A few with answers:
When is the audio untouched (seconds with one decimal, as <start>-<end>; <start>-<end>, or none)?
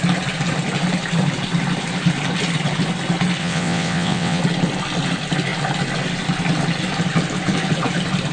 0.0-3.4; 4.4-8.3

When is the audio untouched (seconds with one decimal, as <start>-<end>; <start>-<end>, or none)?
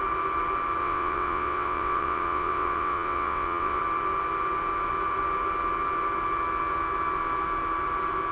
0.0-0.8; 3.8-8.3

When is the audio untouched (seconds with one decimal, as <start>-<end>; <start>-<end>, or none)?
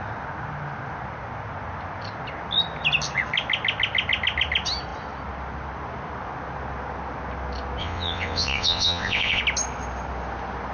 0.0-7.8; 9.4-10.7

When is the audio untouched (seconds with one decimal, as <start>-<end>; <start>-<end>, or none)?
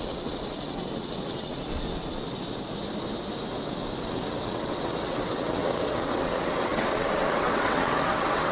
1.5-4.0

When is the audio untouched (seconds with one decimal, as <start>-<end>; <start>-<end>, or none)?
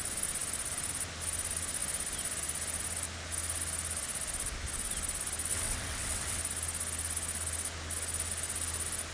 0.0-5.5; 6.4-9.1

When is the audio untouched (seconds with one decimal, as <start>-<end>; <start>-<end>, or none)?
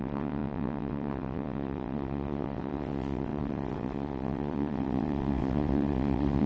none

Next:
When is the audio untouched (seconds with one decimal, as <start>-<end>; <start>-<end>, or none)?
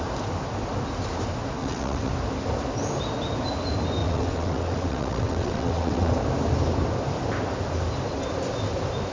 0.0-1.6; 2.1-4.0; 6.1-9.1